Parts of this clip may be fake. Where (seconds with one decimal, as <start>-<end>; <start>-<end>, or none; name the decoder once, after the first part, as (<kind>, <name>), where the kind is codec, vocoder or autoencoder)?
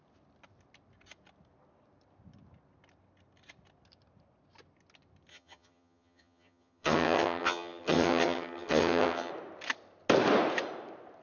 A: 5.3-9.3 (vocoder, HiFi-GAN)